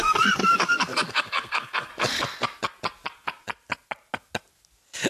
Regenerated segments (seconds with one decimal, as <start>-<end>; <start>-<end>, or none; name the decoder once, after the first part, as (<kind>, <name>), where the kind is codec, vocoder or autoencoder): 0.0-1.9 (codec, SNAC)